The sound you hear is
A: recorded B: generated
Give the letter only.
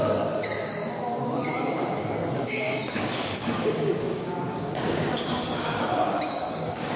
B